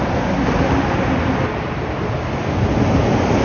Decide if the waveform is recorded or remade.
recorded